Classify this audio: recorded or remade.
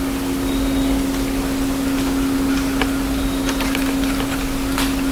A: recorded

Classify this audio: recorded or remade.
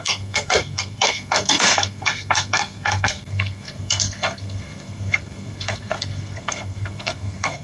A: remade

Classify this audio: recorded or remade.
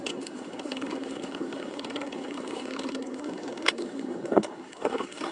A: remade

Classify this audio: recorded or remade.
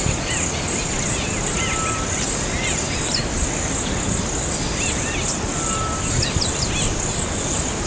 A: recorded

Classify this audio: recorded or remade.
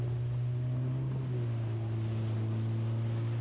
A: recorded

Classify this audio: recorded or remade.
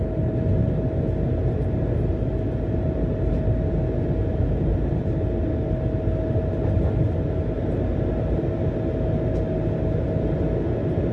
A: recorded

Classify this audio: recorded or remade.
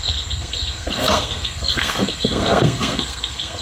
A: remade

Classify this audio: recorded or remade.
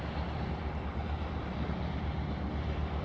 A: recorded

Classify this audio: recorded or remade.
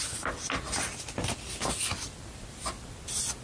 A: recorded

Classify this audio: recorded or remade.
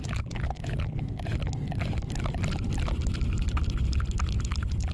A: recorded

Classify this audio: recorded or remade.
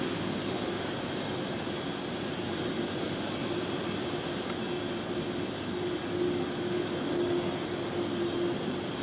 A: recorded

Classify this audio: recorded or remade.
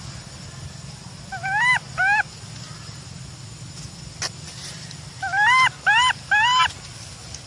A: recorded